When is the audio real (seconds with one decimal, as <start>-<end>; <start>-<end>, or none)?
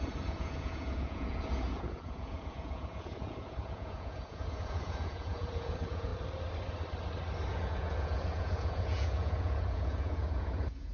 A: 6.1-7.5